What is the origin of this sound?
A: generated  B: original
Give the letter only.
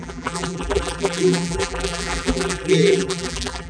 A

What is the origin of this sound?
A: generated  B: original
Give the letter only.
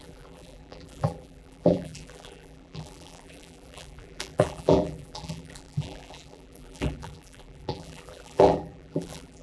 A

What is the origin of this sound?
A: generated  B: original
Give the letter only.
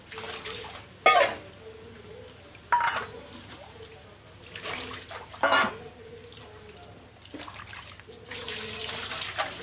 B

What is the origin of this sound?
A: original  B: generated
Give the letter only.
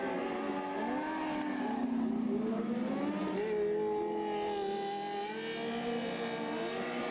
A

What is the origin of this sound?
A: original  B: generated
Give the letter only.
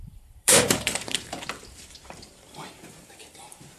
B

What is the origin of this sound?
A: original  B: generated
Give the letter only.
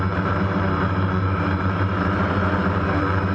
B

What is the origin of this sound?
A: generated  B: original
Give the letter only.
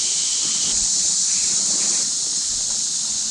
A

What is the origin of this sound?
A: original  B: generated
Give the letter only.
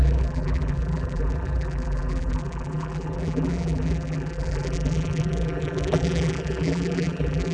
B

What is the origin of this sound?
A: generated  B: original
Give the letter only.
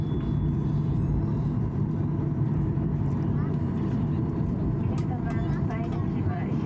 A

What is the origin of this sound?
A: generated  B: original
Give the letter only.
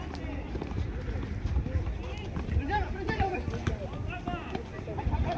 B